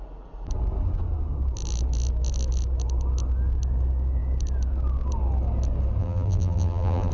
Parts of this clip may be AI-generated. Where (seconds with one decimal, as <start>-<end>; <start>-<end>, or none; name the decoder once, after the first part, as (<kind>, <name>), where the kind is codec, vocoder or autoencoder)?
6.0-7.1 (vocoder, BigVGAN v2)

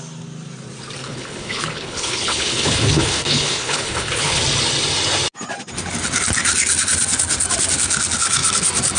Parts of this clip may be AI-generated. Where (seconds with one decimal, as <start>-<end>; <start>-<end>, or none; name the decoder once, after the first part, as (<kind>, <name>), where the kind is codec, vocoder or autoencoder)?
1.0-4.4 (codec, HILCodec)